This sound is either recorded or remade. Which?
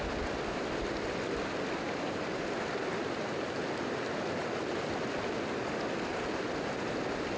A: recorded